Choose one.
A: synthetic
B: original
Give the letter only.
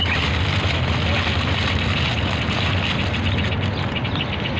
B